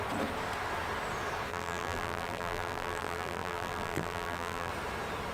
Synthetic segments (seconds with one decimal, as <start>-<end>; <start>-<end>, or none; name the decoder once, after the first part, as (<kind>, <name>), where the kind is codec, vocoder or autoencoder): 1.5-4.7 (vocoder, BigVGAN v2)